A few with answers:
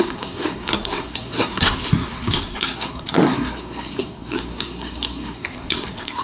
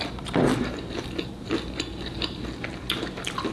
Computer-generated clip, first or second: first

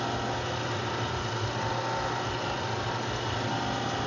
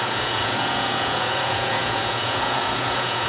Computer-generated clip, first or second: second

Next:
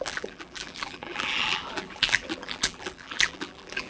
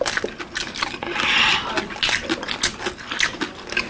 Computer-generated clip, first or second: first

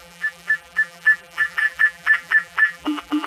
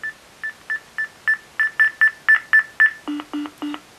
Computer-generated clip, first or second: first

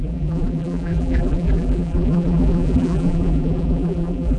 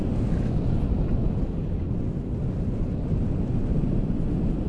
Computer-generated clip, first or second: first